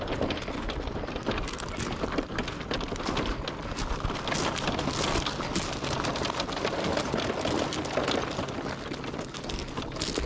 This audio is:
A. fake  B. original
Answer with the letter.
B